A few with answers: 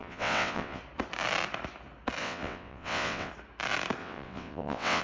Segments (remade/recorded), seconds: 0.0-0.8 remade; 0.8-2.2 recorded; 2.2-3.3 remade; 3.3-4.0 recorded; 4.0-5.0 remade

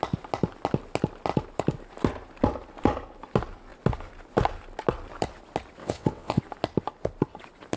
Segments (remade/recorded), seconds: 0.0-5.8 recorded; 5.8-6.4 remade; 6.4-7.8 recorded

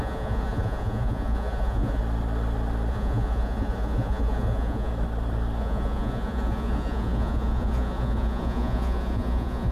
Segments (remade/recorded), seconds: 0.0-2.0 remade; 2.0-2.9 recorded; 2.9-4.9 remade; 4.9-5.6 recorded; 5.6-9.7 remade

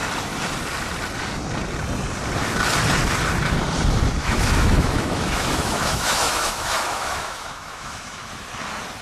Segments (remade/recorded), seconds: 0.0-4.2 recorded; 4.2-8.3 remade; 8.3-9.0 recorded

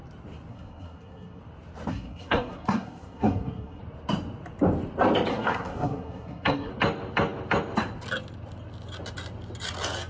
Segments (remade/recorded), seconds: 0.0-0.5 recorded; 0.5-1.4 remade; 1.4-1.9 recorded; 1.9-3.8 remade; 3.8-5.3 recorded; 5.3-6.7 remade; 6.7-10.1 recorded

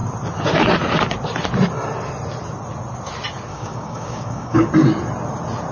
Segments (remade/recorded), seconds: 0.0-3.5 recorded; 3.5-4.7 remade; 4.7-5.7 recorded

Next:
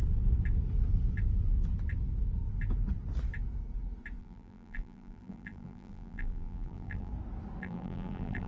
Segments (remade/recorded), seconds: 0.0-4.2 recorded; 4.2-7.1 remade; 7.1-7.6 recorded; 7.6-8.5 remade

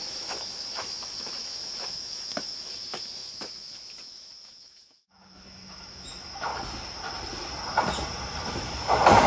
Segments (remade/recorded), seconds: 0.0-6.5 remade; 6.5-8.5 recorded; 8.5-9.3 remade